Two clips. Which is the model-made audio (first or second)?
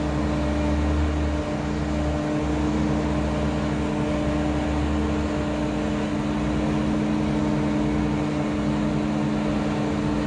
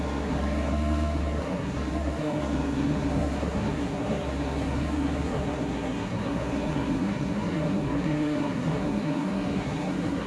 second